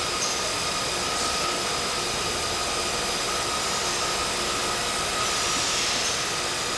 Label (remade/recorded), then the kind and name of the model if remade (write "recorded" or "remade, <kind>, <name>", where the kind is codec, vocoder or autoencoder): recorded